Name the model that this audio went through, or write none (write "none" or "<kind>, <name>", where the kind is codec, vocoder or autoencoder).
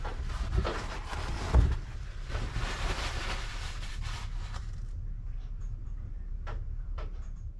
vocoder, BigVGAN v2